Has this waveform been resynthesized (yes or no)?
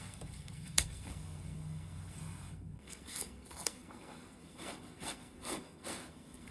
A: yes